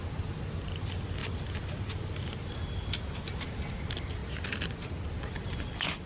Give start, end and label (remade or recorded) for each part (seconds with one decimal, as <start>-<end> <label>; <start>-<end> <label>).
0.0-6.1 recorded